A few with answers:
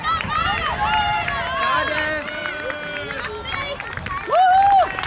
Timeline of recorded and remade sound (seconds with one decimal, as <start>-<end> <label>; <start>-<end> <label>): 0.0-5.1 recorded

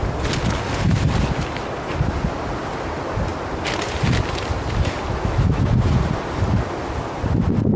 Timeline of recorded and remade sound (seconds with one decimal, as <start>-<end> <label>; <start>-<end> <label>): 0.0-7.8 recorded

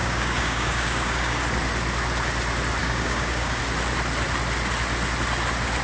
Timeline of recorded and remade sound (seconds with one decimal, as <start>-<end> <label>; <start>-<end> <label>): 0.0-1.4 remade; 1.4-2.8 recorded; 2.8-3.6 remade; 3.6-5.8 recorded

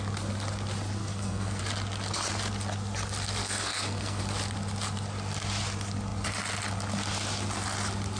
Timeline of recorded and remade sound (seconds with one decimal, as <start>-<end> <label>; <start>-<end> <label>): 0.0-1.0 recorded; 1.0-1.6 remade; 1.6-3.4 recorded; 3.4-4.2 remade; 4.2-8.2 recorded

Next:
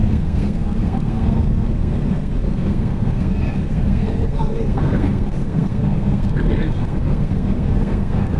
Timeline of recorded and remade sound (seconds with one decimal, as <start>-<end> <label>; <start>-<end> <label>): 0.0-8.4 remade

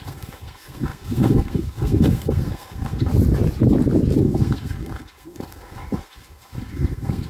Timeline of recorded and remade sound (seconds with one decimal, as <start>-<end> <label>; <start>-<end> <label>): 0.0-3.1 remade; 3.1-4.2 recorded; 4.2-7.3 remade

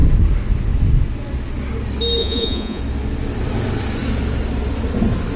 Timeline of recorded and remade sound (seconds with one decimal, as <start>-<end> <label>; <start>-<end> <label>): 0.0-2.2 recorded; 2.2-2.8 remade; 2.8-5.4 recorded